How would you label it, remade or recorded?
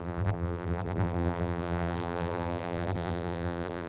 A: remade